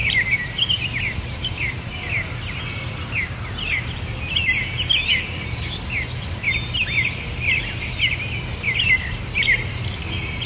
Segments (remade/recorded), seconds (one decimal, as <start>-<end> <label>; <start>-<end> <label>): 0.0-10.5 recorded